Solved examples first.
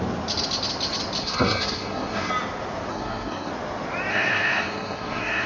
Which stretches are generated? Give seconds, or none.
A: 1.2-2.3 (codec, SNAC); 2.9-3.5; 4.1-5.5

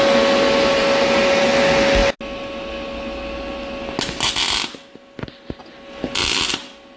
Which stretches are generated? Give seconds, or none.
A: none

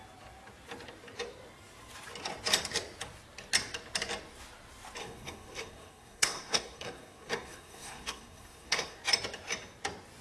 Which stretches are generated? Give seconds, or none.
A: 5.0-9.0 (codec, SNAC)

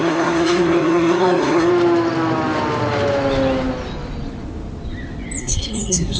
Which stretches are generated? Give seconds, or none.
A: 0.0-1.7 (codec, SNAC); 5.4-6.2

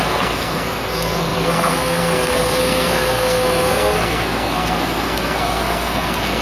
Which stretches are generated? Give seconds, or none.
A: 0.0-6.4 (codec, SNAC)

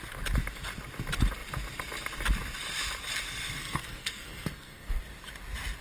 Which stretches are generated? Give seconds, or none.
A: 3.6-5.0 (codec, SNAC)

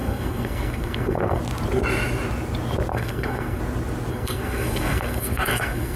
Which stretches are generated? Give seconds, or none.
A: 0.0-1.4 (codec, SNAC); 2.9-3.6; 4.1-6.0

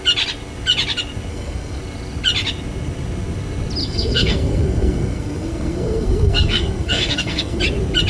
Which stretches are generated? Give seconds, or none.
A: 1.3-1.8 (codec, SNAC); 3.8-7.6